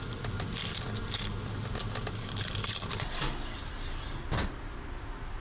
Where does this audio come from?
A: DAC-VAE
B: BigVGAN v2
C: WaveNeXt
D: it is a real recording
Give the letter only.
D